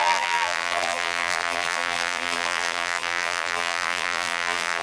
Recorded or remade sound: remade